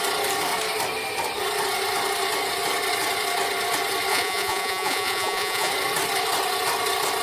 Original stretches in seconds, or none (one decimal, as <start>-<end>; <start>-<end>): 0.0-4.1; 5.7-7.2